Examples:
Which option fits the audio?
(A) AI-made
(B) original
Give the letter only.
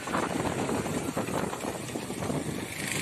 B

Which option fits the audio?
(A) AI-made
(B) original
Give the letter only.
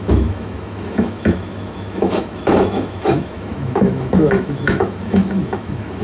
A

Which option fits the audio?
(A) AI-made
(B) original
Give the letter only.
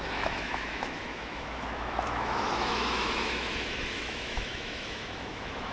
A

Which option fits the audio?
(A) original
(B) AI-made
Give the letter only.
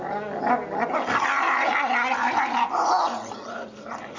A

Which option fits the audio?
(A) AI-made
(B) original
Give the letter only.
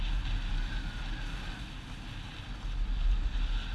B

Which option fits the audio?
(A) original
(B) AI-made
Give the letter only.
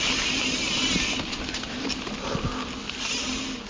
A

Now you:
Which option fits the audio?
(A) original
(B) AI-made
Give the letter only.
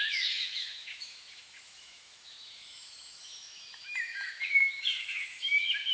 B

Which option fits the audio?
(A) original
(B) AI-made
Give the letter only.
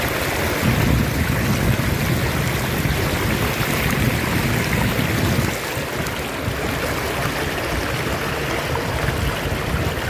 A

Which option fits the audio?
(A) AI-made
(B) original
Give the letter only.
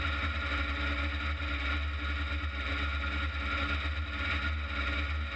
B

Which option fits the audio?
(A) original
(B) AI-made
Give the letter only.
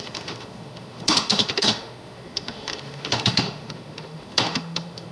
B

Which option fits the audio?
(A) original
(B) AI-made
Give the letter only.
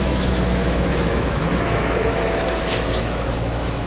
B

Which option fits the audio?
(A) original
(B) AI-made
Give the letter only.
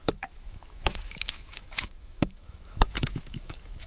B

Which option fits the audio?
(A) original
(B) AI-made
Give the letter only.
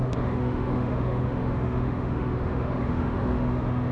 B